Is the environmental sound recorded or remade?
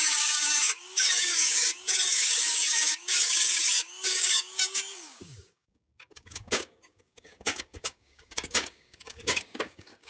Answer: remade